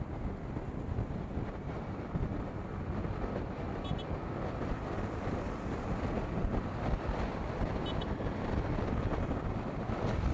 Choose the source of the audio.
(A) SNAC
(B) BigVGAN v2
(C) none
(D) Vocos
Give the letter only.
B